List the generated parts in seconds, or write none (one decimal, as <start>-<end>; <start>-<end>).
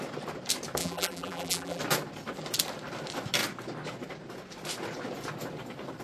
0.8-1.8